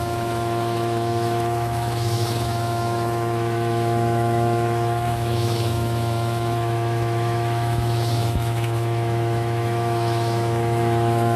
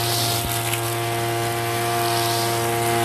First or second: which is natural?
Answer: second